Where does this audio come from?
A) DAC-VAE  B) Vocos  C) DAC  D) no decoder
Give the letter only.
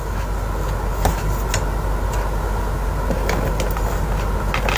D